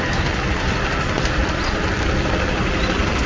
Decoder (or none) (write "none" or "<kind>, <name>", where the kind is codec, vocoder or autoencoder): none